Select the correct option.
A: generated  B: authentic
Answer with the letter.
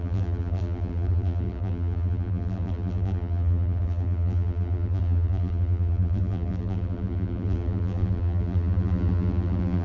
A